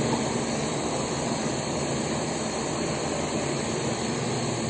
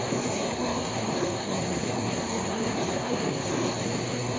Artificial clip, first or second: second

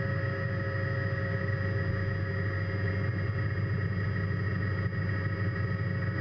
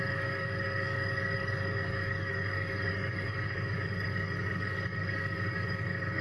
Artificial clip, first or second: second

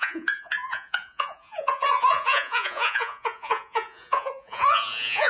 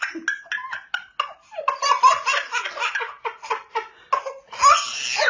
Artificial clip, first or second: first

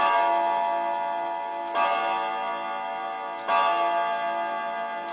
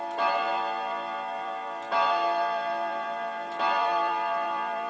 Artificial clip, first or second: second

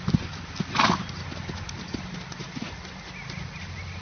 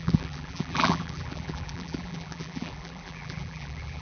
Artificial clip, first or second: second